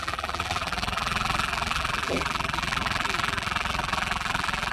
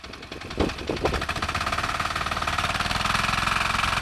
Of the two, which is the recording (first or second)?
second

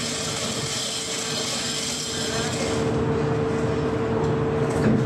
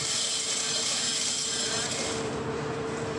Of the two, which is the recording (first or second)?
first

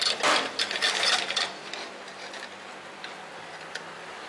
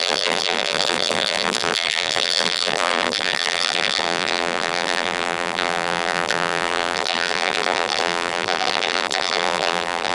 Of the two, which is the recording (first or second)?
first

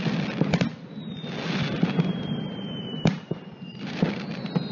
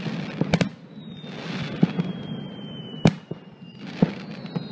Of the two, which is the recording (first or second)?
second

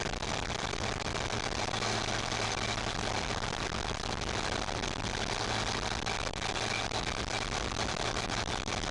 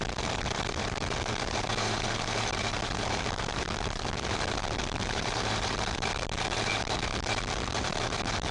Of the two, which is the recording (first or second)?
first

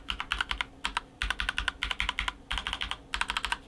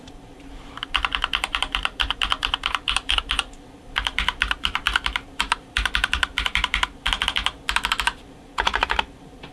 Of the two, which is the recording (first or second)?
first